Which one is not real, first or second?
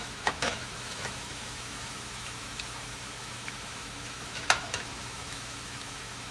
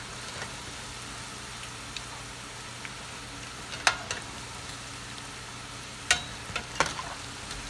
first